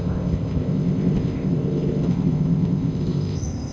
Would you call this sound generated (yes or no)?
yes